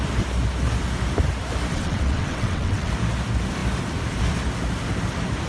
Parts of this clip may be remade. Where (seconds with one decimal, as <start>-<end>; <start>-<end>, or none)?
1.7-2.9